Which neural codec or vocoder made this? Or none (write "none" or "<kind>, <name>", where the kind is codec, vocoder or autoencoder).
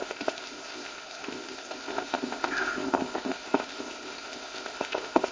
codec, ZipCodec